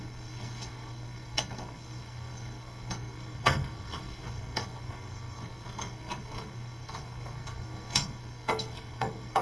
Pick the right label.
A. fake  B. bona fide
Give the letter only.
A